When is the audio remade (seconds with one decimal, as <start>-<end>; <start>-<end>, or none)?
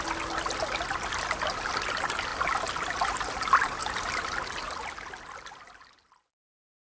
none